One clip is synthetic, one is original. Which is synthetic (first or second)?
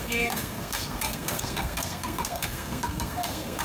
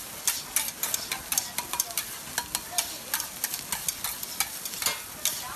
first